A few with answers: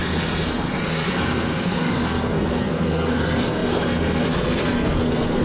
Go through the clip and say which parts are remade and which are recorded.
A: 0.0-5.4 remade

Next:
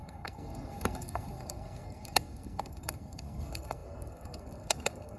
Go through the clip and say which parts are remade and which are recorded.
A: 0.0-5.2 remade

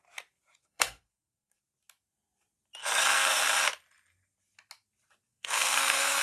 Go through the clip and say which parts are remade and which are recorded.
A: 0.0-0.6 recorded; 0.6-1.6 remade; 1.6-2.8 recorded; 2.8-3.4 remade; 3.4-5.3 recorded; 5.3-6.2 remade